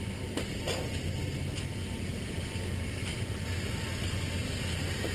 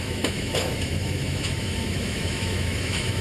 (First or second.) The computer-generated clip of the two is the second